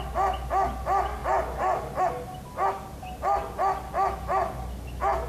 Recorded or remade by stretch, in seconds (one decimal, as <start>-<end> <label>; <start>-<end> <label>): 0.0-5.3 recorded